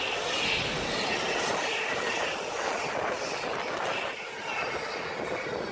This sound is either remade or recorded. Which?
recorded